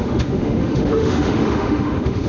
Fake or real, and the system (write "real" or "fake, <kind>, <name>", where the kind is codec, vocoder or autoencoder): fake, autoencoder, DAC-VAE